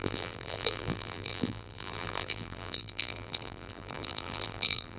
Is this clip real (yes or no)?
no